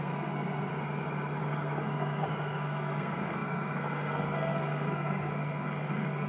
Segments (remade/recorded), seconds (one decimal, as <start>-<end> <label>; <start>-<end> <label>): 0.0-0.7 remade; 0.7-1.4 recorded; 1.4-6.3 remade